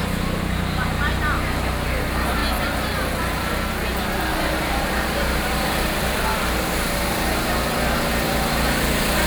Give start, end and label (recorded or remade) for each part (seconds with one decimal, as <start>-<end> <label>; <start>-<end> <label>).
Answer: 0.0-9.3 recorded